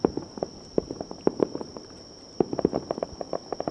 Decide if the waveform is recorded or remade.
recorded